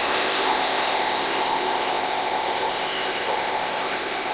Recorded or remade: remade